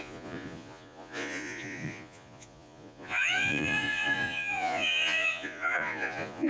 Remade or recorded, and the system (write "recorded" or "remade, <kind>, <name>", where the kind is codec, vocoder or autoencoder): remade, vocoder, Vocos